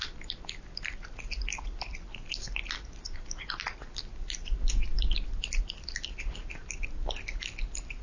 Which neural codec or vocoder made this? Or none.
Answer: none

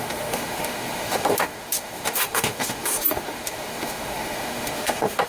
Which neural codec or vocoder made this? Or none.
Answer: autoencoder, DAC-VAE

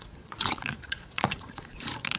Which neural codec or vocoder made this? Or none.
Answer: vocoder, Vocos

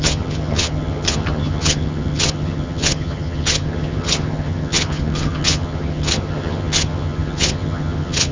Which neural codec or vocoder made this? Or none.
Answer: vocoder, HiFi-GAN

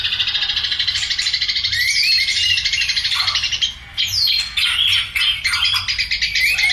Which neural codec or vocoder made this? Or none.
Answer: none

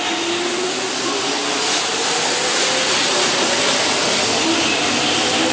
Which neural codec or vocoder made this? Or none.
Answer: none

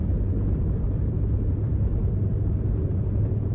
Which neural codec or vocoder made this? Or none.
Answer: vocoder, BigVGAN v2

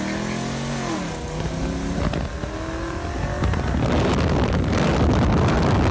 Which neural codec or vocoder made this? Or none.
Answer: none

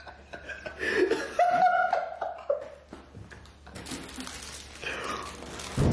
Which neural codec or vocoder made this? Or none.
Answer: none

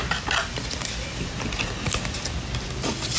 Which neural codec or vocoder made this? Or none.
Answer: none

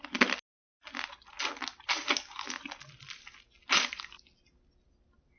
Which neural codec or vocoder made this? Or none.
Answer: none